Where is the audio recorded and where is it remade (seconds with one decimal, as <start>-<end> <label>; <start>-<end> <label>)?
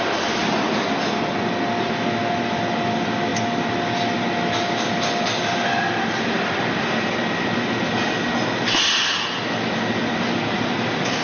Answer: 0.0-11.2 recorded